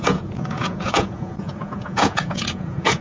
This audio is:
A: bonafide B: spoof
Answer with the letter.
B